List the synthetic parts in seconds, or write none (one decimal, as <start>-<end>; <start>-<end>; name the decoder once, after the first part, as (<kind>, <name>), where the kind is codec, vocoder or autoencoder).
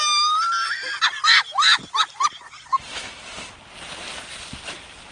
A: 2.7-3.5 (autoencoder, DAC-VAE)